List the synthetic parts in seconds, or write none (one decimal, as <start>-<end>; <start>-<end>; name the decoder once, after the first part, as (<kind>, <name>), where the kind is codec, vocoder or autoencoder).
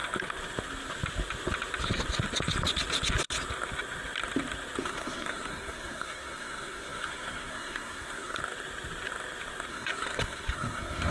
4.8-8.4 (codec, SNAC); 9.7-11.1